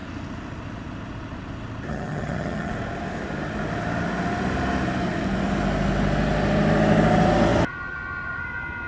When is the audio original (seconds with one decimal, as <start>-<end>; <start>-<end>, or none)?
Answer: 0.0-1.9; 2.7-8.9